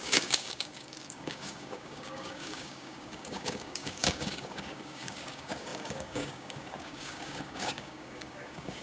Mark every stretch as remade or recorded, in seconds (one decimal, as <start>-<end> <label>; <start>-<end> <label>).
0.0-8.8 remade